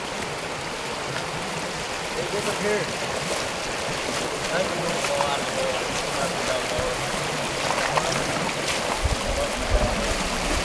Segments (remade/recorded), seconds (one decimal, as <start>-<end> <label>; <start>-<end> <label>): 0.0-5.6 recorded; 5.6-6.3 remade; 6.3-10.6 recorded